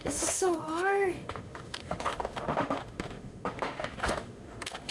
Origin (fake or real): fake